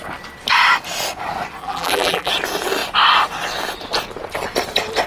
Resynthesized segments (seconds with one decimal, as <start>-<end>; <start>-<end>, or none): 1.6-2.3